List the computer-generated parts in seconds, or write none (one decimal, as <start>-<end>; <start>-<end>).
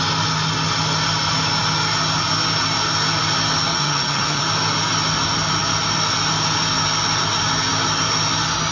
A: 3.7-4.4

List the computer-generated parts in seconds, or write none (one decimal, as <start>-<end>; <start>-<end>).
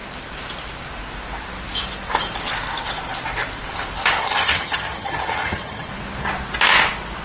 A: 4.2-5.9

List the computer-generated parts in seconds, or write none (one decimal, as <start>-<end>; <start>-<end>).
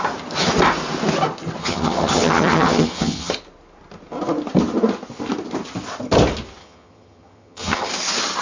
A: 1.6-3.3; 6.6-7.9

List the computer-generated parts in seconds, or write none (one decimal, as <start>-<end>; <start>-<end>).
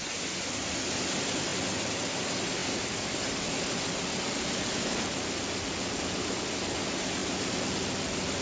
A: none